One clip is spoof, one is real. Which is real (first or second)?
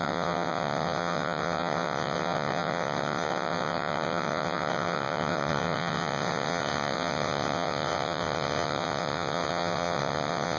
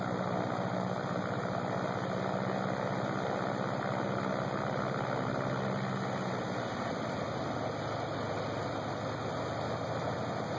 second